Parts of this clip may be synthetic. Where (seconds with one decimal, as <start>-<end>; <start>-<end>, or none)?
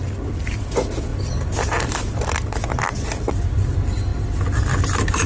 none